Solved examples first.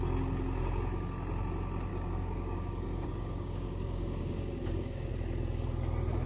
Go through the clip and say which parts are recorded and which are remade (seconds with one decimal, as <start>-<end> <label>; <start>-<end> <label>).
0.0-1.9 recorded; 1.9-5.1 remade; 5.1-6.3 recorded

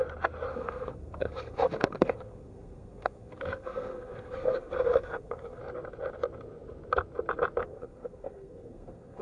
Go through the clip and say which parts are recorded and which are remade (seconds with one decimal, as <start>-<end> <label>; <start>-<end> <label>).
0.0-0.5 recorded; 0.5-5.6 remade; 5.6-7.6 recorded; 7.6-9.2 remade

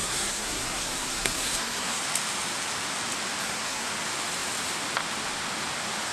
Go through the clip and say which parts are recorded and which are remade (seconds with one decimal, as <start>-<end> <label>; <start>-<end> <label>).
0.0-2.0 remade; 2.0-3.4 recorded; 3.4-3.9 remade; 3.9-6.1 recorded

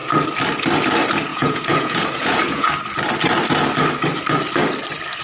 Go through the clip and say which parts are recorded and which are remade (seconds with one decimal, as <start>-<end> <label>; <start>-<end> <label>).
0.0-1.3 recorded; 1.3-2.7 remade; 2.7-5.2 recorded